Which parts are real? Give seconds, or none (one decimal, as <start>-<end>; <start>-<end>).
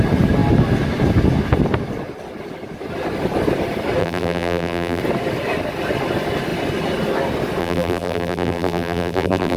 0.0-4.0; 5.0-7.6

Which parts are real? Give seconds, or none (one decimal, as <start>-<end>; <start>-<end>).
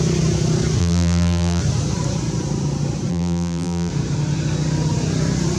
0.0-0.8; 1.6-3.1; 3.9-5.6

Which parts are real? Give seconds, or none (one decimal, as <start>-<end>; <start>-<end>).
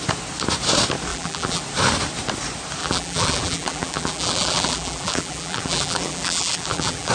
0.0-1.1; 1.6-2.8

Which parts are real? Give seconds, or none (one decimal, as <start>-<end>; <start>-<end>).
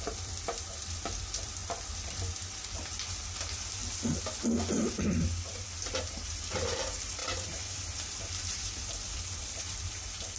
1.6-2.9; 3.8-6.0